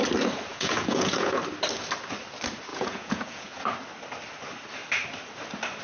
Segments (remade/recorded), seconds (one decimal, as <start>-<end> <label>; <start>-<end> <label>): 0.0-0.5 recorded; 0.5-1.4 remade; 1.4-2.7 recorded; 2.7-3.6 remade; 3.6-5.8 recorded